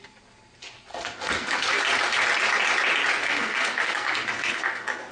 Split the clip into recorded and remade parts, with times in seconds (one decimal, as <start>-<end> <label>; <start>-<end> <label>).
0.0-0.9 recorded; 0.9-1.8 remade; 1.8-3.2 recorded; 3.2-5.1 remade